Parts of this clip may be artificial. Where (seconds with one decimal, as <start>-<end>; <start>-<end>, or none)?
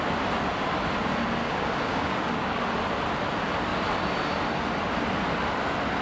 1.4-2.6